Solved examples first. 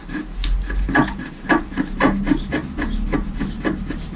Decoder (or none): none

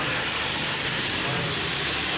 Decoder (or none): none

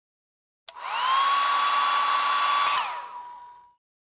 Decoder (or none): none